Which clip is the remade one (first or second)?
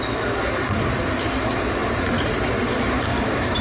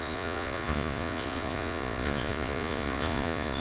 second